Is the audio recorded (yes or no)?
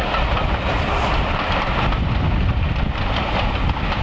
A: no